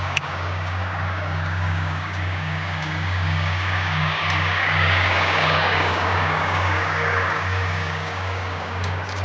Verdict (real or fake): fake